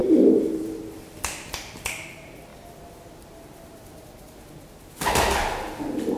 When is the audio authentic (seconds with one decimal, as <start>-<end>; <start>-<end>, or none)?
2.5-6.2